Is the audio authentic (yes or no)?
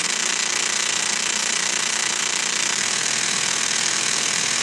no